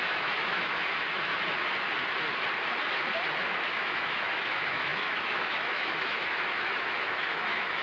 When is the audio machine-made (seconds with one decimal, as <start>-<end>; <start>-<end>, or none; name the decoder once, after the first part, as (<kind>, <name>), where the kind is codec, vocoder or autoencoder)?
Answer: 0.0-1.3 (autoencoder, DAC-VAE); 3.7-7.8